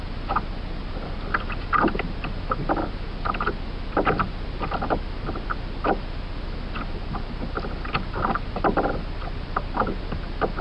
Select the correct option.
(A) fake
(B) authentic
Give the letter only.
B